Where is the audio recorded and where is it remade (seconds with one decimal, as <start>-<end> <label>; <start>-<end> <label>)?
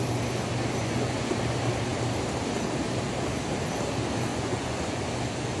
0.0-0.8 recorded; 0.8-1.3 remade; 1.3-4.3 recorded; 4.3-5.0 remade; 5.0-5.6 recorded